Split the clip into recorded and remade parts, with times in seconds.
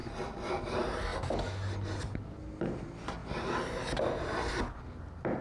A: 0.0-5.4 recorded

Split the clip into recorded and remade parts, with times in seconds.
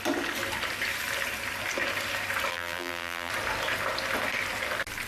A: 0.0-2.5 recorded; 2.5-3.3 remade; 3.3-5.1 recorded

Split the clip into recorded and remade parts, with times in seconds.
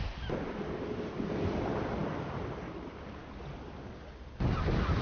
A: 0.0-5.0 recorded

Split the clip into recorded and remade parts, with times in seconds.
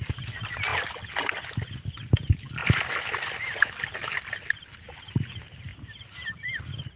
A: 0.0-2.6 recorded; 2.6-4.3 remade; 4.3-5.7 recorded; 5.7-6.6 remade; 6.6-7.0 recorded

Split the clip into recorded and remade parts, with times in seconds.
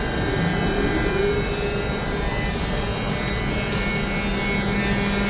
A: 0.0-5.3 recorded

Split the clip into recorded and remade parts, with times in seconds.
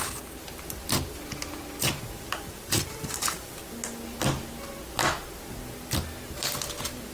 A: 0.0-1.8 recorded; 1.8-3.5 remade; 3.5-7.1 recorded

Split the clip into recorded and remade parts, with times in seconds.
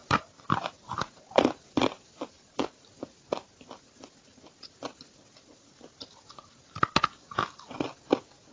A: 0.0-8.5 recorded